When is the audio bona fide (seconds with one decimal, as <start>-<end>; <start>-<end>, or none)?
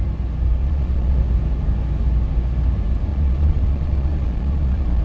0.0-0.6; 1.2-3.1